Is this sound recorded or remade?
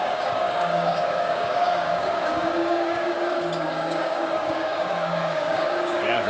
remade